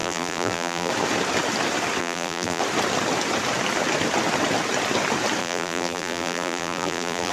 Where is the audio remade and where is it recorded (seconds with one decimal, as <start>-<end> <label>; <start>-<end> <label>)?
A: 0.0-0.9 remade; 0.9-2.0 recorded; 2.0-2.6 remade; 2.6-5.4 recorded; 5.4-7.3 remade